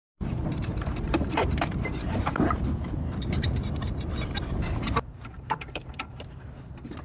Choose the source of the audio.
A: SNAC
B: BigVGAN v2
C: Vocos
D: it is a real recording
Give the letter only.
B